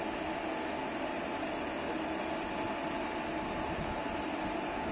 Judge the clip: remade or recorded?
recorded